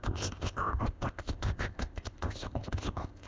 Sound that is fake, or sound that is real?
fake